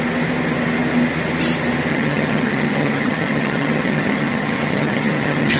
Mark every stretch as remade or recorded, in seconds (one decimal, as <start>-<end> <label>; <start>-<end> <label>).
0.0-1.9 recorded; 1.9-5.6 remade